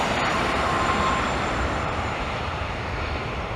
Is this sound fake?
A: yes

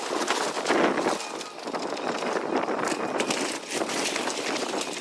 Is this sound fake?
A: no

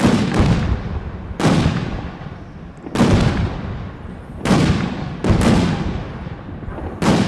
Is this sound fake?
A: no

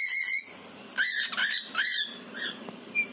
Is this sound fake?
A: yes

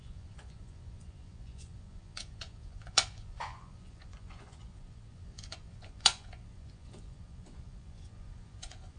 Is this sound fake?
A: yes